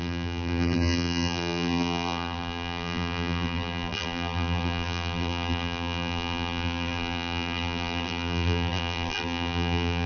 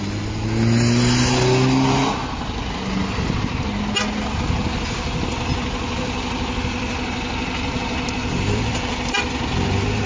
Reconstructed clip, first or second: first